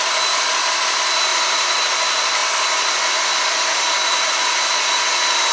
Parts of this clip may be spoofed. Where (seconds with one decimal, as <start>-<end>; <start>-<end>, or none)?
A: 1.3-1.8; 4.0-4.6